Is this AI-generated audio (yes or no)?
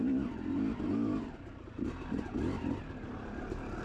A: no